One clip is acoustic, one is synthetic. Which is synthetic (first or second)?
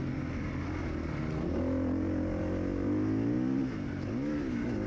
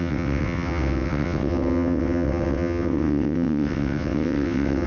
second